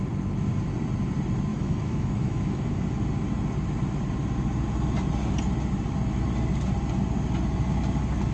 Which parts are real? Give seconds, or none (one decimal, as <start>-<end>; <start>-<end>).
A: 0.0-1.5; 3.0-8.3